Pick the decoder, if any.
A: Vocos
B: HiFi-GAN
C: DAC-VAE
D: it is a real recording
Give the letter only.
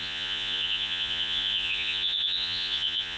A